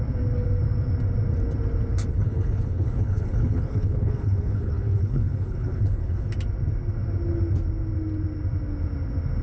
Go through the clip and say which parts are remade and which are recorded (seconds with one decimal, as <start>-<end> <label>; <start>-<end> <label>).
0.0-2.1 recorded; 2.1-6.3 remade; 6.3-9.4 recorded